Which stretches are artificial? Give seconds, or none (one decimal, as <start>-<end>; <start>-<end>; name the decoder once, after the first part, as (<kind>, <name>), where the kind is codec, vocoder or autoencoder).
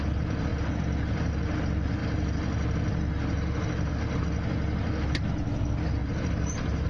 6.0-6.9 (vocoder, BigVGAN v2)